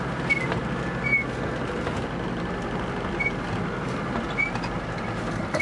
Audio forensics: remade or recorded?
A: recorded